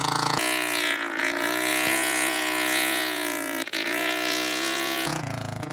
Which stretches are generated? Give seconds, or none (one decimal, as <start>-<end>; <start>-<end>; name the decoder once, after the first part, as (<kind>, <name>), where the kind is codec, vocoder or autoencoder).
0.0-5.7 (vocoder, Vocos)